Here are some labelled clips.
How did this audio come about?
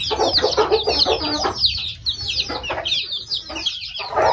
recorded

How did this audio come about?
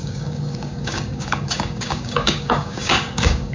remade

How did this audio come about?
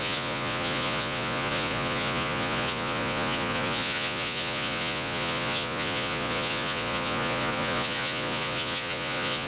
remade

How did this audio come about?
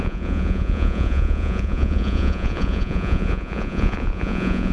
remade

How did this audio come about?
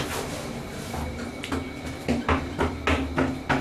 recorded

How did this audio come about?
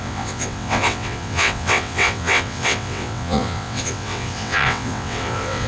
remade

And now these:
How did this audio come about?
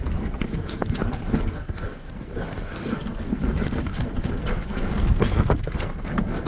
remade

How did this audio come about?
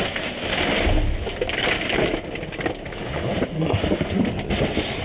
recorded